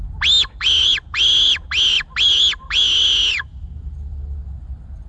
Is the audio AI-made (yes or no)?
no